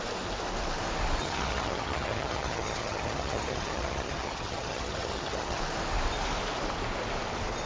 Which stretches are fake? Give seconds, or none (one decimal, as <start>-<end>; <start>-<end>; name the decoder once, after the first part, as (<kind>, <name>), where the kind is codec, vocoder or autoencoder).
1.2-5.6 (vocoder, HiFi-GAN)